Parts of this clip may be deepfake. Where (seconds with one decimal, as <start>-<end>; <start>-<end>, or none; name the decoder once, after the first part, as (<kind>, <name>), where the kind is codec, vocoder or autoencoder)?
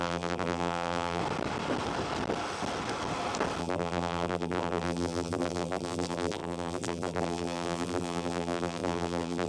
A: 0.0-1.2 (vocoder, BigVGAN v2); 3.6-9.5